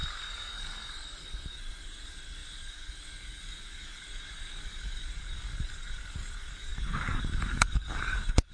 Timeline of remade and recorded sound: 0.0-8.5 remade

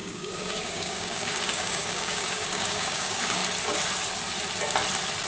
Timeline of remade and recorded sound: 0.0-3.4 remade; 3.4-5.3 recorded

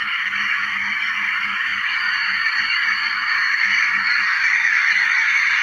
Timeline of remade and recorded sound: 0.0-5.6 remade

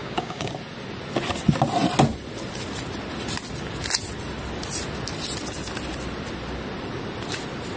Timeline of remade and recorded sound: 0.0-0.5 remade; 0.5-7.8 recorded

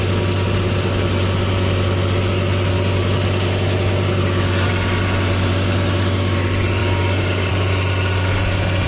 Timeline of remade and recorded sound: 0.0-6.8 recorded; 6.8-7.5 remade; 7.5-8.9 recorded